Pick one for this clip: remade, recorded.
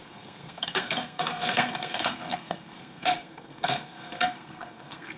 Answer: remade